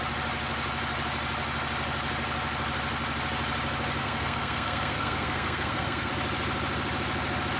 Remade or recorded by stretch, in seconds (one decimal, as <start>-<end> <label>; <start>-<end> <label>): 0.0-4.0 recorded; 4.0-6.1 remade; 6.1-7.6 recorded